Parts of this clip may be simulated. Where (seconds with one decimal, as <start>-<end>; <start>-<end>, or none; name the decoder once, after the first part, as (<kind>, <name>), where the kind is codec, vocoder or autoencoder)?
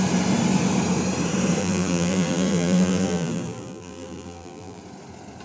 1.6-4.8 (vocoder, BigVGAN v2)